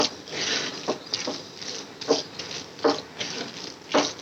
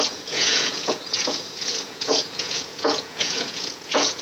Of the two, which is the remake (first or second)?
second